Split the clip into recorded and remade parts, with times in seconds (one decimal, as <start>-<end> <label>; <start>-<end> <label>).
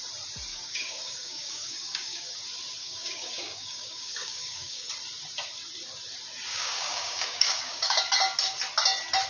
0.0-0.5 recorded; 0.5-2.4 remade; 2.4-2.8 recorded; 2.8-4.9 remade; 4.9-6.5 recorded; 6.5-8.0 remade; 8.0-9.3 recorded